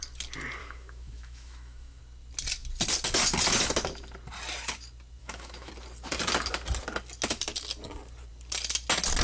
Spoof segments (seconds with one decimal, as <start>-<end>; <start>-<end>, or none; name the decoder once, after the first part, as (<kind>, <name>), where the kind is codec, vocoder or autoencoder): 0.6-2.0 (autoencoder, DAC-VAE); 5.2-5.7